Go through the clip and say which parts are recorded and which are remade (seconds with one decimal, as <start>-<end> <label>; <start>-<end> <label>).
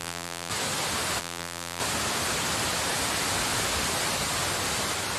0.0-0.5 remade; 0.5-1.2 recorded; 1.2-1.8 remade; 1.8-5.2 recorded